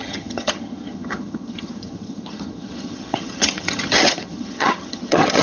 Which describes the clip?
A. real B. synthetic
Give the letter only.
B